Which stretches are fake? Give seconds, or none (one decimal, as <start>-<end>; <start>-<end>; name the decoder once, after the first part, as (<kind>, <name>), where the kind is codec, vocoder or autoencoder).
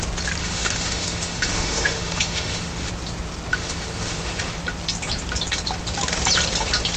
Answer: 0.4-2.9 (autoencoder, DAC-VAE); 3.5-4.6